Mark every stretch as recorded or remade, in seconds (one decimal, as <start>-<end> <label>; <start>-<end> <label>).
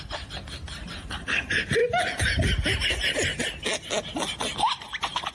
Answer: 0.0-1.8 remade; 1.8-5.3 recorded